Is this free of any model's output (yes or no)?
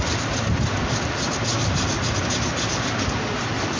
yes